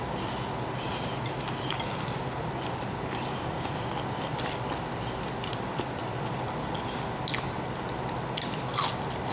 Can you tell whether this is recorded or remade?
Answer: recorded